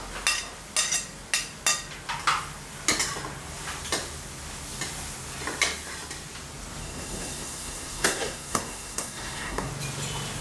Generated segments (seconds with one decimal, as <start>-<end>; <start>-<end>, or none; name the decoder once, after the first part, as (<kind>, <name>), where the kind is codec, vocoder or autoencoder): 6.8-9.7 (codec, SNAC)